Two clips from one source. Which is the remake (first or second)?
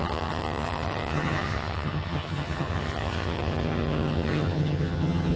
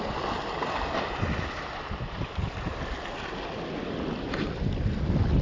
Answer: first